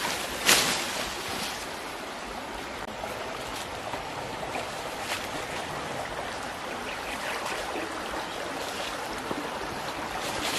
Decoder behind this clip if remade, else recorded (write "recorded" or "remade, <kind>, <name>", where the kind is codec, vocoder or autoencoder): recorded